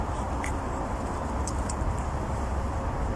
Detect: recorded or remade remade